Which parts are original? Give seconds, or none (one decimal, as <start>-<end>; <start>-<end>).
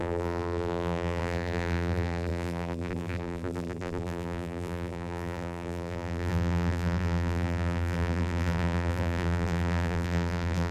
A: none